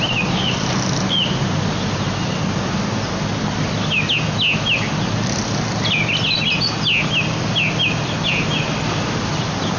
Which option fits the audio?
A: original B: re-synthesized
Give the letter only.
A